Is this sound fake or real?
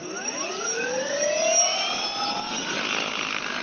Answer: real